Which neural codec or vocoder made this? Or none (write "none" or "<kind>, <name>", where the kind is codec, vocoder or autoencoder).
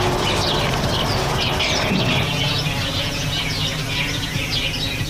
none